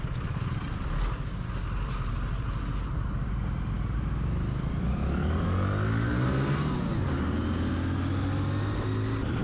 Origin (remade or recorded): recorded